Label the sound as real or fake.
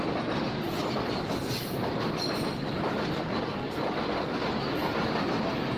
real